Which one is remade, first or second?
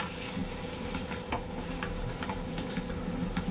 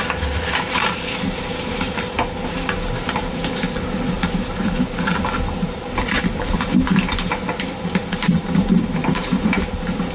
second